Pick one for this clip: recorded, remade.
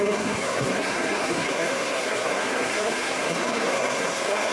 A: remade